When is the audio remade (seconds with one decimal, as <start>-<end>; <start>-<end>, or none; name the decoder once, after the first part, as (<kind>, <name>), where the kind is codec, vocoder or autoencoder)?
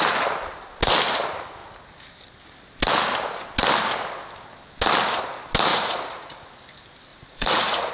5.7-6.5 (vocoder, Vocos); 7.1-7.9